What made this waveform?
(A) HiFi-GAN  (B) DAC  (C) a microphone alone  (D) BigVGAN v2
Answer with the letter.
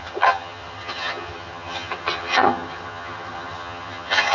A